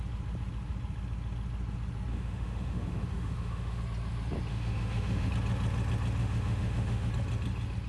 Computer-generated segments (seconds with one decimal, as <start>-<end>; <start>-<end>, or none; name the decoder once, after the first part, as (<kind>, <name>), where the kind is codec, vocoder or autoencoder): 2.1-3.8 (autoencoder, DAC-VAE); 4.5-5.3; 6.2-7.1